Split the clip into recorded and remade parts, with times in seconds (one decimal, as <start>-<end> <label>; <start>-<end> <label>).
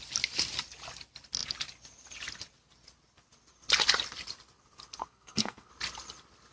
0.0-5.0 recorded; 5.0-5.7 remade; 5.7-6.5 recorded